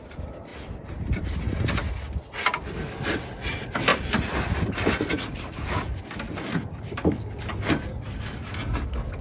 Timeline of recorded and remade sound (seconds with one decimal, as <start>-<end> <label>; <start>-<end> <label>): 0.0-0.5 recorded; 0.5-1.4 remade; 1.4-3.9 recorded; 3.9-6.8 remade; 6.8-9.2 recorded